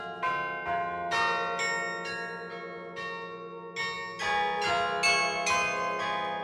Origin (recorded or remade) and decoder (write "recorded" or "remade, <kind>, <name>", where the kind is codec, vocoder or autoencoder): recorded